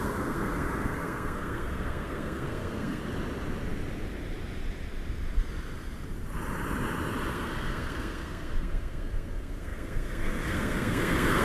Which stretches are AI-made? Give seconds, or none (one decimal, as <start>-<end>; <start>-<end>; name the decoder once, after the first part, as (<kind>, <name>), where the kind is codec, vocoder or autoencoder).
0.0-3.0 (codec, SNAC); 7.3-11.4